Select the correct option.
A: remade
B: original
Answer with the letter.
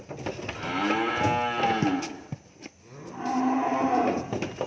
B